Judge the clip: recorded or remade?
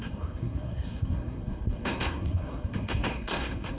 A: remade